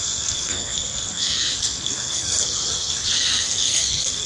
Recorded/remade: remade